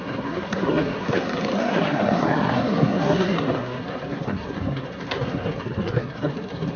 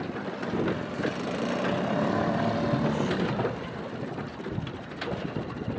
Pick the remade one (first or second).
first